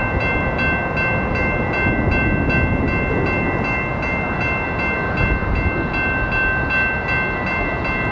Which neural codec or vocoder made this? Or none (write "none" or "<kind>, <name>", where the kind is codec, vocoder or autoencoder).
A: none